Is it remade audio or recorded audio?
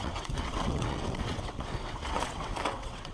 remade